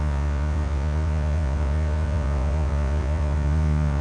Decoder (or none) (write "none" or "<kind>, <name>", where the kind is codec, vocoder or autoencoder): vocoder, Vocos